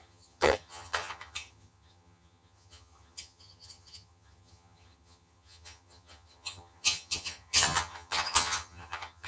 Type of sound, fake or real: fake